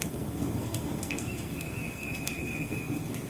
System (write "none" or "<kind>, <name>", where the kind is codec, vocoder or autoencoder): codec, SNAC